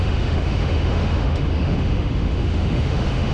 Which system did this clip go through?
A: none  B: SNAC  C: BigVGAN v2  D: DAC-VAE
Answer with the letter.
D